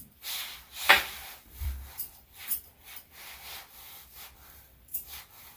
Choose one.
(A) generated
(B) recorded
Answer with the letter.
A